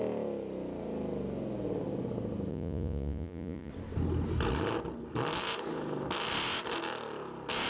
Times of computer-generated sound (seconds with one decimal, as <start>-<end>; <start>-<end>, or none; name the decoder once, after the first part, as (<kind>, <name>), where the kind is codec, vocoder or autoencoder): 2.5-3.7 (vocoder, Vocos)